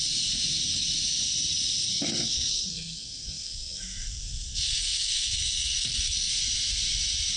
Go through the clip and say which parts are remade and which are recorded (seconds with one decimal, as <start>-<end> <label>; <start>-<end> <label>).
0.0-1.9 recorded; 1.9-6.3 remade; 6.3-7.4 recorded